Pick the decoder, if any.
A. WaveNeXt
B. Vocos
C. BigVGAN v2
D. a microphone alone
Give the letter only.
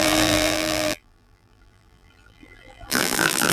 C